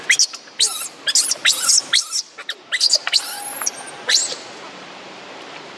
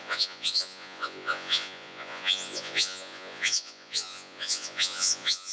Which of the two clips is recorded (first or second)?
first